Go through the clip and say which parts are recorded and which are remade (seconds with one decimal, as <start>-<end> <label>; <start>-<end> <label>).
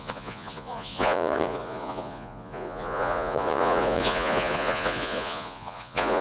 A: 0.0-6.2 remade